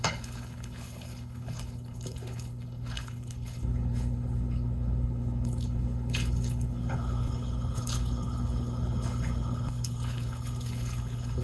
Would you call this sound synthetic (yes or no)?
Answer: yes